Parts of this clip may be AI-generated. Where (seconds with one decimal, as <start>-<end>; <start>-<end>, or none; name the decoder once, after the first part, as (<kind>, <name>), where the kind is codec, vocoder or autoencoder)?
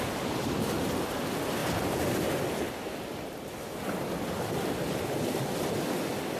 none